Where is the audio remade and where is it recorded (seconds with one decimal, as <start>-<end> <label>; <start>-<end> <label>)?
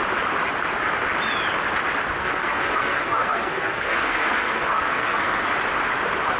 0.0-2.2 recorded; 2.2-5.5 remade; 5.5-6.4 recorded